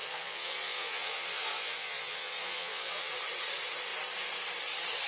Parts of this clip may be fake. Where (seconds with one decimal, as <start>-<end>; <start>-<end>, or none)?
0.0-3.1